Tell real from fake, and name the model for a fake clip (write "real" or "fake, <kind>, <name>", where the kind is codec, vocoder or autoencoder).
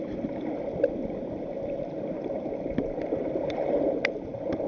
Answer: real